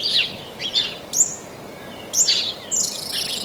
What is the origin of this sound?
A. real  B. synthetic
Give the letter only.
A